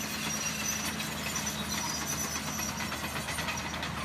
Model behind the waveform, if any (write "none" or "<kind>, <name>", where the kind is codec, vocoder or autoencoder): none